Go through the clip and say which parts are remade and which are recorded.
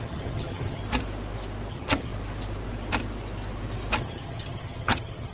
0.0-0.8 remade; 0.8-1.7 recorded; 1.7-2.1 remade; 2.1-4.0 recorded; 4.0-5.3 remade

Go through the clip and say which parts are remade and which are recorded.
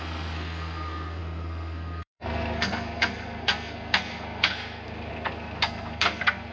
0.0-6.5 remade